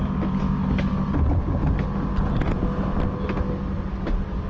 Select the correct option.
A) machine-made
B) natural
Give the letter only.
B